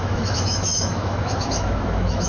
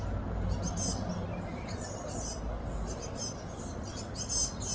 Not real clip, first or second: first